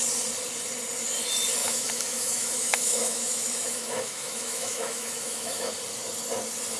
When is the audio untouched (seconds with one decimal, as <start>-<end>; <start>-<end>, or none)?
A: 0.0-1.6; 5.7-6.8